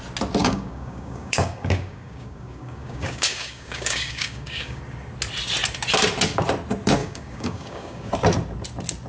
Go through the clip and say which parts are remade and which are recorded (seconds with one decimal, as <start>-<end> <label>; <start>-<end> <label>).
0.0-0.4 recorded; 0.4-4.8 remade; 4.8-7.0 recorded; 7.0-8.1 remade; 8.1-9.1 recorded